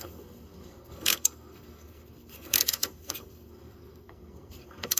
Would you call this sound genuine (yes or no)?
no